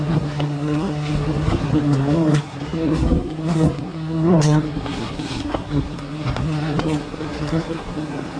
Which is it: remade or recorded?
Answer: remade